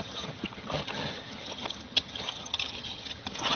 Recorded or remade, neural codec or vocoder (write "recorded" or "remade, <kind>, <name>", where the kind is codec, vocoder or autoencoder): remade, vocoder, HiFi-GAN